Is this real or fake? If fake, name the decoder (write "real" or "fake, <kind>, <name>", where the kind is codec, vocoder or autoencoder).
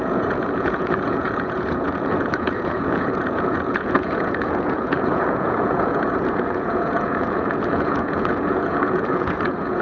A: fake, vocoder, Vocos